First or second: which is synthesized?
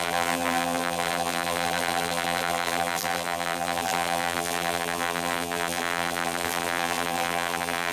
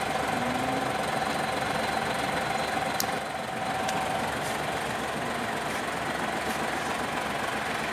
first